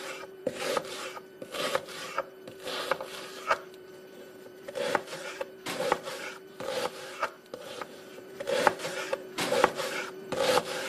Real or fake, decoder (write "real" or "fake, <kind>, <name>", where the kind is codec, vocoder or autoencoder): fake, vocoder, BigVGAN v2